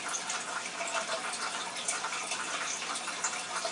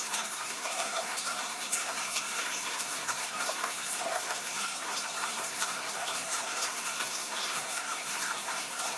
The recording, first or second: first